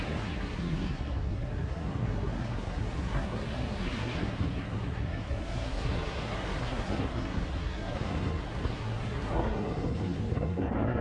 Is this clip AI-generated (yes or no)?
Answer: yes